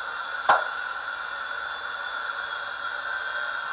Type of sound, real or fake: real